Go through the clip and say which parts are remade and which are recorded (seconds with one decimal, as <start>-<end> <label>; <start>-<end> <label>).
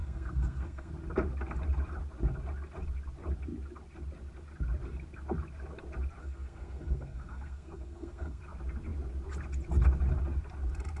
0.0-0.9 remade; 0.9-6.2 recorded; 6.2-8.4 remade; 8.4-11.0 recorded